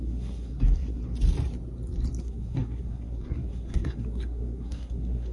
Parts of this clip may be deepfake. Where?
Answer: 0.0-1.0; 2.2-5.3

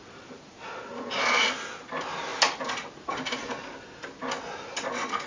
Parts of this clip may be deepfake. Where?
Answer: none

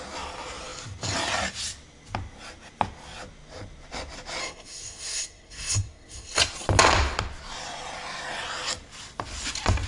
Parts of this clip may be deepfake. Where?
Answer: 4.4-6.4

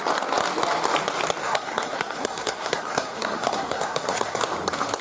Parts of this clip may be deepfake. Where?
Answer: 1.4-4.4

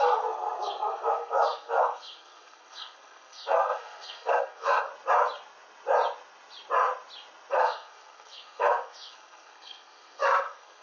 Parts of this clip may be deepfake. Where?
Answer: 0.0-4.9; 7.5-10.8

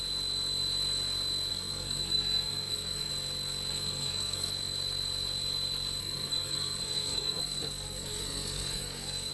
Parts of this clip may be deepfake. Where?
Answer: 1.5-3.1; 3.7-4.5; 6.0-9.3

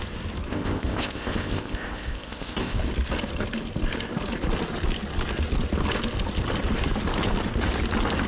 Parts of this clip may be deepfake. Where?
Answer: 0.5-2.8